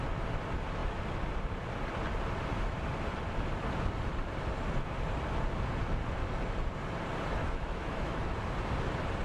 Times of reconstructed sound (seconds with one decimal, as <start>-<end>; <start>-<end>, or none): 7.4-8.2